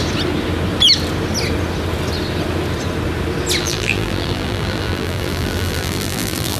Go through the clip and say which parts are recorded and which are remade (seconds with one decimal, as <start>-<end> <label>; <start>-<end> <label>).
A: 0.0-3.6 recorded; 3.6-6.6 remade